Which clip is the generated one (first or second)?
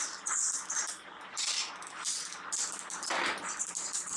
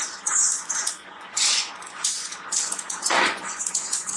second